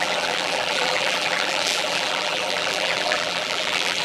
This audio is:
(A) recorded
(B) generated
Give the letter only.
B